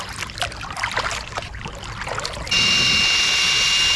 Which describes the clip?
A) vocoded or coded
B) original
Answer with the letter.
B